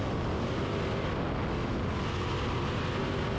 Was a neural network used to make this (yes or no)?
no